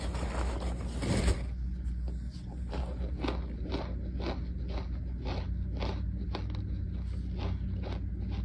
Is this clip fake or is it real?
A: real